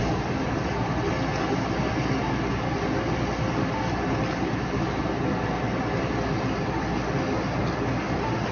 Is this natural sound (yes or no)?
yes